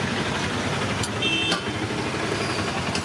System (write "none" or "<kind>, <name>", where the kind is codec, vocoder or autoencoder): none